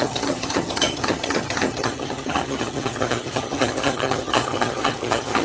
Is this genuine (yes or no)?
no